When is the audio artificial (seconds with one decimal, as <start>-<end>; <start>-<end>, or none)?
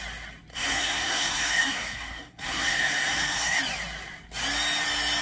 0.5-3.6